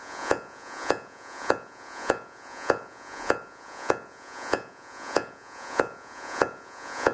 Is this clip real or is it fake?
fake